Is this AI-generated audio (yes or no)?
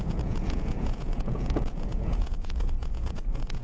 yes